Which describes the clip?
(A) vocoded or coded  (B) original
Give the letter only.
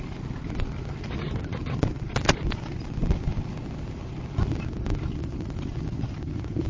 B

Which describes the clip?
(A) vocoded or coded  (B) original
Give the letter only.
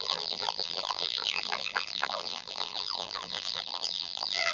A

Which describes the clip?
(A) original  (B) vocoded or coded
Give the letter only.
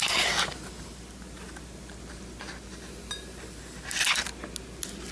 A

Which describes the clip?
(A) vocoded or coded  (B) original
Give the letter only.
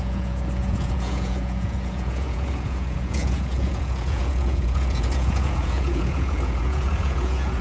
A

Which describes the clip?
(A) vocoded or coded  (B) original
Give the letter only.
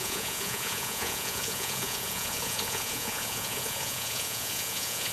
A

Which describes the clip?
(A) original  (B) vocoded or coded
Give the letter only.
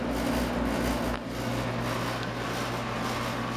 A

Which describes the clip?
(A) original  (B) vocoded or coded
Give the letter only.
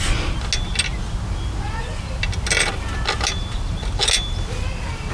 A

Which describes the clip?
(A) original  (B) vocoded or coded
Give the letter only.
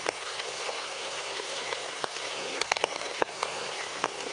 B